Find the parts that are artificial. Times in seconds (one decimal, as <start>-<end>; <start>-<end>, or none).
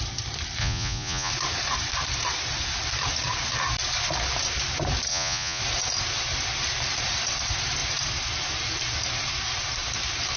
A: 0.6-1.3; 5.1-5.6